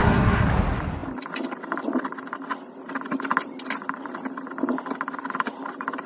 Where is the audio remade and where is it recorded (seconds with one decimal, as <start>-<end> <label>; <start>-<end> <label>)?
0.0-0.5 remade; 0.5-6.1 recorded